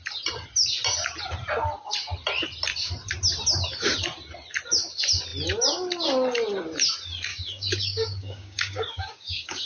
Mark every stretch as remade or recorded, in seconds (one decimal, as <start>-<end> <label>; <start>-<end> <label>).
0.0-7.3 recorded; 7.3-9.7 remade